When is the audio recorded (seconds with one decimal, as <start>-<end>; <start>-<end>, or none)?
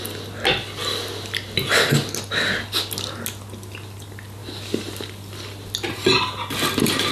0.0-7.1